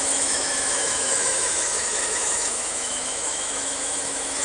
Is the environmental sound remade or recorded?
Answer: remade